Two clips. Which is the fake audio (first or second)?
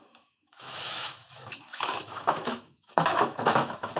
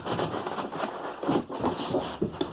first